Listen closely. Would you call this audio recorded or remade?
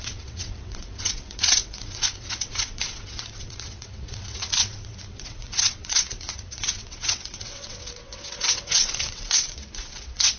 remade